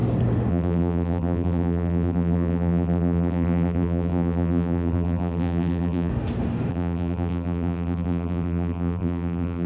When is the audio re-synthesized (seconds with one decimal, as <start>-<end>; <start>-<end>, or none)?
0.5-6.1; 6.7-9.7